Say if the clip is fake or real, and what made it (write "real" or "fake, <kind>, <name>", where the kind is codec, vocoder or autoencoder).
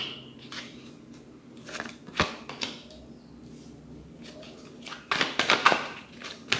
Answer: real